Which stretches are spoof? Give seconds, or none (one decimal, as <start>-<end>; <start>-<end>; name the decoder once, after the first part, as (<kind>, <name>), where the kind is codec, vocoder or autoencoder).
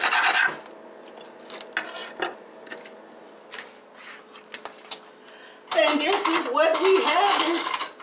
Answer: none